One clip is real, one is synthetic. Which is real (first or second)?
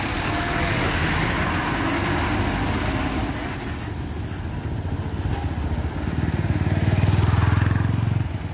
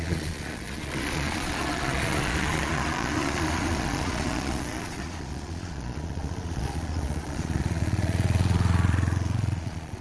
first